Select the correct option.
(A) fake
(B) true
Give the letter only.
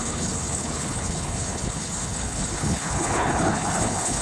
A